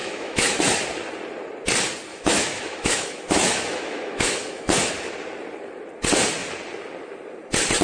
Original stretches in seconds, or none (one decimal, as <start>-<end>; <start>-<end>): 0.6-2.1; 4.9-7.8